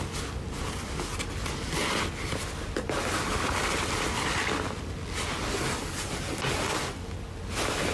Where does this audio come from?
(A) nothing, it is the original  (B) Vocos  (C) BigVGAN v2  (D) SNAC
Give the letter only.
A